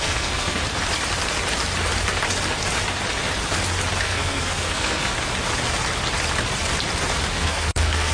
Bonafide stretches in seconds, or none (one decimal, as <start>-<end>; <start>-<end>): 0.6-4.0; 5.1-7.3